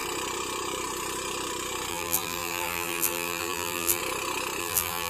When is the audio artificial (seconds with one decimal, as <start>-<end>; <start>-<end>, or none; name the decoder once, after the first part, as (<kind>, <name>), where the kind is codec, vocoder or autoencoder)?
1.9-4.0 (vocoder, BigVGAN v2); 4.6-5.1